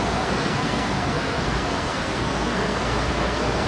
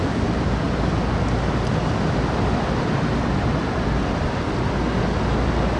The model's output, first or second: first